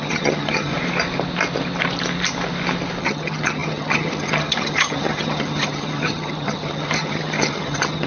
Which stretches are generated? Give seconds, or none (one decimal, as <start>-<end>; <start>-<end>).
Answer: 0.0-0.7; 3.0-8.1